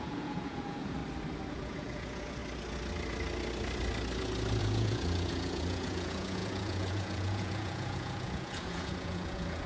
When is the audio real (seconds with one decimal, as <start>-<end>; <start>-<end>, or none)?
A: 1.0-1.5; 2.4-4.6